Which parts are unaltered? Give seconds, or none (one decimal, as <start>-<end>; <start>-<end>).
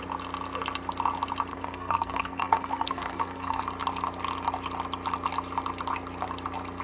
0.0-1.5; 3.6-6.8